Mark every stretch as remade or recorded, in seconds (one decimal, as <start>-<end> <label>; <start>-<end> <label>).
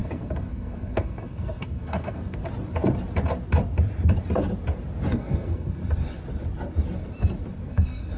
0.0-2.4 remade; 2.4-5.1 recorded; 5.1-5.8 remade; 5.8-7.6 recorded; 7.6-8.2 remade